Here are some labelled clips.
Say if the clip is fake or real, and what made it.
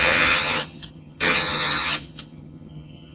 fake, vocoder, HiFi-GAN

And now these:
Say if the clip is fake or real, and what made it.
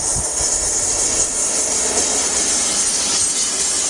real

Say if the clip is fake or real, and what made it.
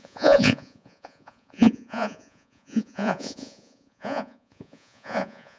fake, vocoder, Vocos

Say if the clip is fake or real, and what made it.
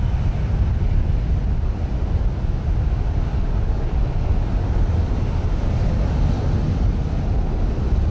real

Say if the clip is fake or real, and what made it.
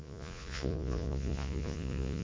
fake, vocoder, Vocos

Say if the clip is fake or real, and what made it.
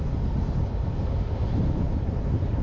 real